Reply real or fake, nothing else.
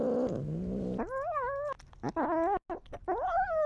real